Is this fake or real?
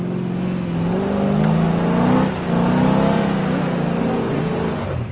real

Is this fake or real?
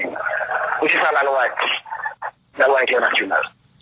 real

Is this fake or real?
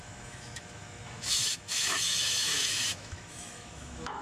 fake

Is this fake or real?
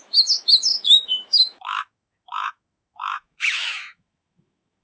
fake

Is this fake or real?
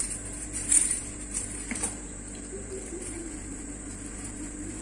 fake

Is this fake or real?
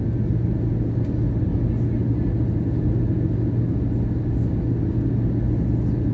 real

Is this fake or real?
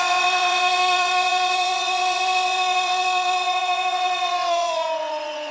fake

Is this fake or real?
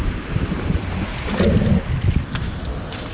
fake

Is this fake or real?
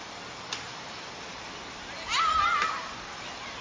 real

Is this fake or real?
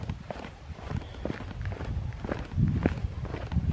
real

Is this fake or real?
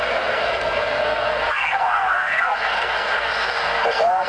fake